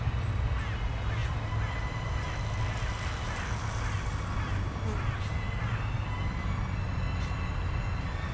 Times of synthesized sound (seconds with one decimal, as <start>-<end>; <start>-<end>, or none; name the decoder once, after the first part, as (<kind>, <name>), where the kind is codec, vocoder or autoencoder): none